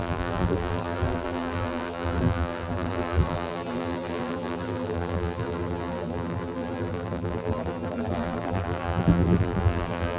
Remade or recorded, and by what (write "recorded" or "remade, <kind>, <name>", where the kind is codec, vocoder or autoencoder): remade, vocoder, BigVGAN v2